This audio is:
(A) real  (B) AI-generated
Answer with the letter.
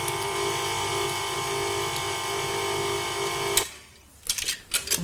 A